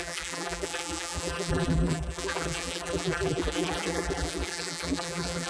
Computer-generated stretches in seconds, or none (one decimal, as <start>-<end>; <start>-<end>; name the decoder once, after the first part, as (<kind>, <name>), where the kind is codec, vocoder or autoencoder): 0.0-5.5 (vocoder, BigVGAN v2)